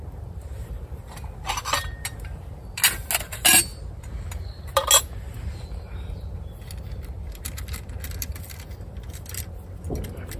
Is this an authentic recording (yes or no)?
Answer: yes